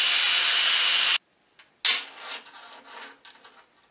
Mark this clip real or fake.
real